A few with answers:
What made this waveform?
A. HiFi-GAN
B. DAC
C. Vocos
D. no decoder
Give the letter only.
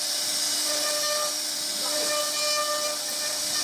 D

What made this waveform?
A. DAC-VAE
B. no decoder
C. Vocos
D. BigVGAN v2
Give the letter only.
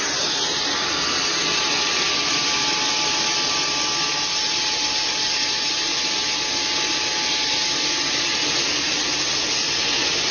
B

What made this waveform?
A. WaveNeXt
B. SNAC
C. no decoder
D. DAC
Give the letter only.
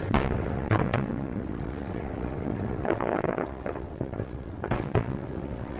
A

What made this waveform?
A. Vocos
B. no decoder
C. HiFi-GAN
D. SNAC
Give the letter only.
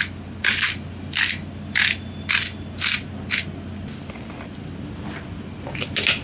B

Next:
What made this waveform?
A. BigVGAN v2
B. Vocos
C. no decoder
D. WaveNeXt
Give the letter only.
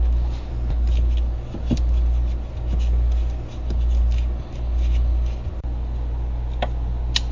C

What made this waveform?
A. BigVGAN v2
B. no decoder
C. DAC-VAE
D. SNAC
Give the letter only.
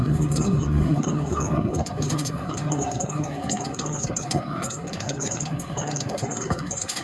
D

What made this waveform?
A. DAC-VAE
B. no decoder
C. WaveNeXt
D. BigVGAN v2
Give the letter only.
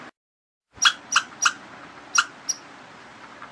B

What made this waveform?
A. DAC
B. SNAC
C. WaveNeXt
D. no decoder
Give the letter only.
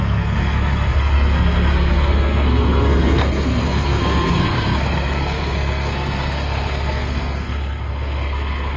B